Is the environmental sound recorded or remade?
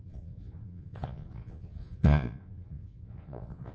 remade